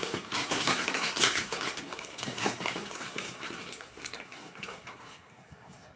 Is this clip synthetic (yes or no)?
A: yes